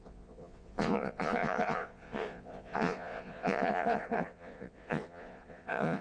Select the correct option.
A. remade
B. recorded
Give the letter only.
A